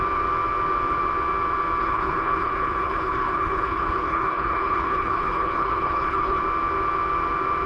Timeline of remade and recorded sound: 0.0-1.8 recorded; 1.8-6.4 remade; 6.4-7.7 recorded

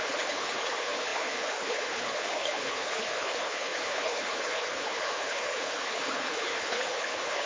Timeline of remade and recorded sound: 0.0-7.5 remade

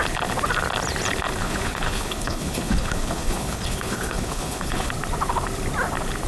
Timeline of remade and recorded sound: 0.0-1.4 recorded; 1.4-4.9 remade; 4.9-6.3 recorded

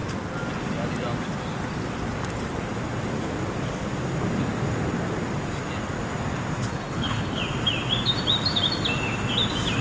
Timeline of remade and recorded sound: 0.0-6.7 recorded; 6.7-7.4 remade; 7.4-9.8 recorded

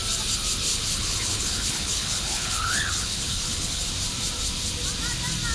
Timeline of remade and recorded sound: 0.0-0.7 recorded; 0.7-3.8 remade; 3.8-5.5 recorded